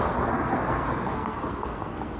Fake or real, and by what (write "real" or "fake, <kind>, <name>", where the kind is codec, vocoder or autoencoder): fake, codec, SNAC